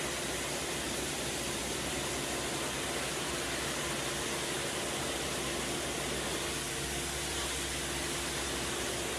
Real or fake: real